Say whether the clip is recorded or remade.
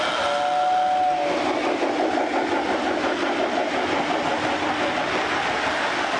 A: recorded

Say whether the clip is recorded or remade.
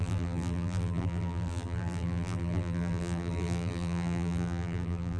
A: remade